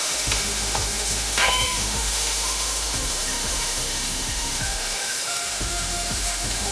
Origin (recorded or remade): remade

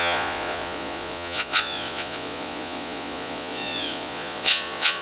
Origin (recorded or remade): remade